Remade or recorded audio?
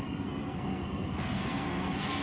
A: remade